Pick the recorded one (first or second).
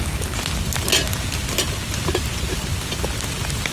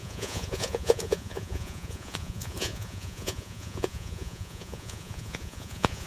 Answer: first